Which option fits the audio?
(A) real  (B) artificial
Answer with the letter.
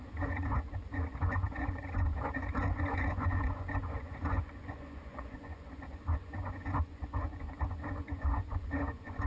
B